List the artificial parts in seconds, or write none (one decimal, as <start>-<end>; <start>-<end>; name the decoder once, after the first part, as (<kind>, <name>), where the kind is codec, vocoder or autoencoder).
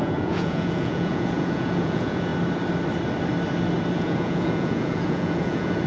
0.0-2.3 (vocoder, Vocos); 3.9-5.9